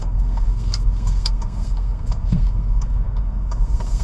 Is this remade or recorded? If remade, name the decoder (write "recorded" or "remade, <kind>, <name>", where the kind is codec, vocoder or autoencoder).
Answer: remade, codec, SNAC